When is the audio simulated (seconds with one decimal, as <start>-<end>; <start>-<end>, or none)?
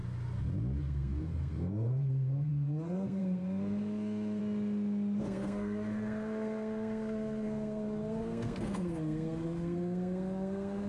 0.8-4.4; 5.2-10.9